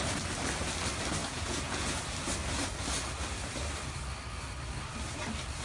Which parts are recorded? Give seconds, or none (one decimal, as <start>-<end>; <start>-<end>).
0.0-1.2; 2.0-5.6